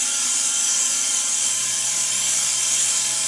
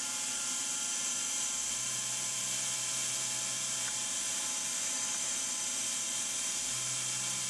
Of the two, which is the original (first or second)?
second